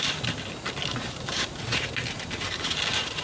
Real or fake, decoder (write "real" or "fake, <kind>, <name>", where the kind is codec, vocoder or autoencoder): real